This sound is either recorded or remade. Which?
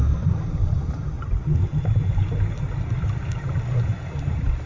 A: recorded